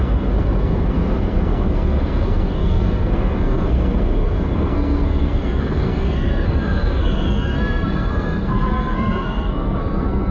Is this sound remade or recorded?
remade